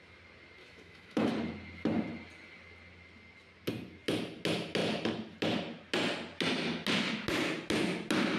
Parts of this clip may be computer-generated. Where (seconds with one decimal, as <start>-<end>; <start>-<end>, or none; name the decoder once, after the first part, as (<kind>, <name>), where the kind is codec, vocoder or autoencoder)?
0.6-1.3 (autoencoder, DAC-VAE)